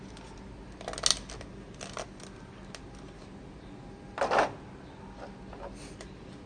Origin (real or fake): real